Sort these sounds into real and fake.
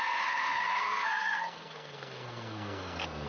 fake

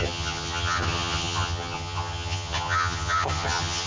fake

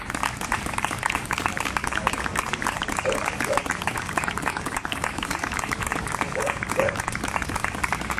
fake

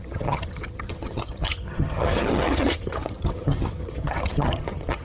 fake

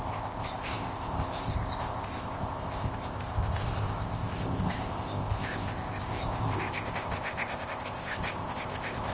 fake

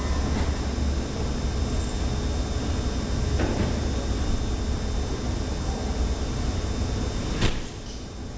real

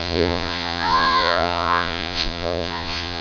fake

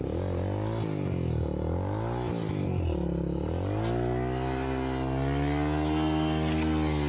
real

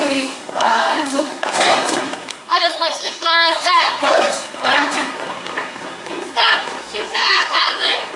fake